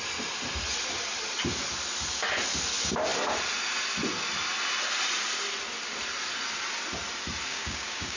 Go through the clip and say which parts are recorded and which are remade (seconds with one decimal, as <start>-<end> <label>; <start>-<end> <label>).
0.0-7.5 recorded; 7.5-8.2 remade